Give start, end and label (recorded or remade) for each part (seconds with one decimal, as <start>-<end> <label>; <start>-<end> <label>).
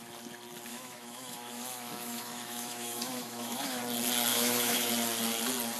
0.0-0.7 recorded; 0.7-3.8 remade; 3.8-4.3 recorded; 4.3-4.9 remade; 4.9-5.8 recorded